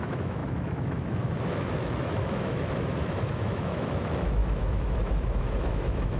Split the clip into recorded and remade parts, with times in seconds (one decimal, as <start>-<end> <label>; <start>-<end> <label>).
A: 0.0-6.2 remade